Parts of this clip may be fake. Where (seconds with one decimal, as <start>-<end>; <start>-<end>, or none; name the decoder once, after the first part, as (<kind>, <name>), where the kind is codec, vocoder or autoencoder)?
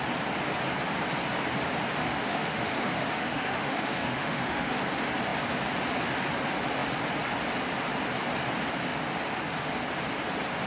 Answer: 2.0-4.8 (autoencoder, DAC-VAE)